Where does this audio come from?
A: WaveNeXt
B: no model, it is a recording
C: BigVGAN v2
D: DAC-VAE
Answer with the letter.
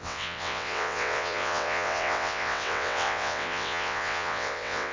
A